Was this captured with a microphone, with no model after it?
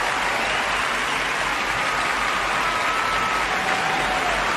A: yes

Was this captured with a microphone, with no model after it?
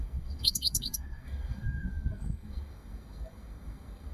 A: no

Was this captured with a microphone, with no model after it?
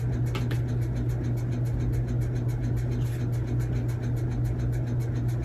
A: yes